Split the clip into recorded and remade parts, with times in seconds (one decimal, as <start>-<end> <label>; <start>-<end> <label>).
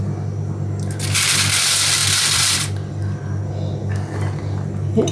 0.0-2.0 recorded; 2.0-3.5 remade; 3.5-5.1 recorded